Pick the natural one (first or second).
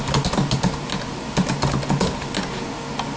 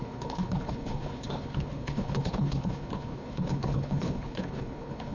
first